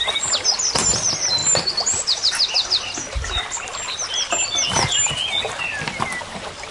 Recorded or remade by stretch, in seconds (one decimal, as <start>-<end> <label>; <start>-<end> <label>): 0.0-6.7 recorded